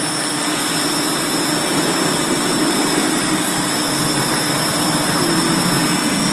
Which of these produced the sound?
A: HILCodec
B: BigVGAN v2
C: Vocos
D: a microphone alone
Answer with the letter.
D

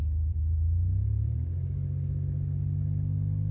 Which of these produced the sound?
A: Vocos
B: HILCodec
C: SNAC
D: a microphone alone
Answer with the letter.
D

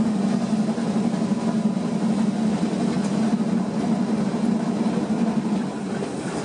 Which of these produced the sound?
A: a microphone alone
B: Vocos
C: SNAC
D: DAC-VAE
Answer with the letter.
A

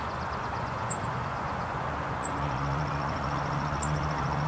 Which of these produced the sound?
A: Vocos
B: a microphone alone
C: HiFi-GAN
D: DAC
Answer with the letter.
A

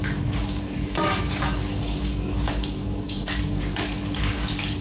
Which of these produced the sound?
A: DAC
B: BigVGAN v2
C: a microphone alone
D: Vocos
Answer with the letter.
A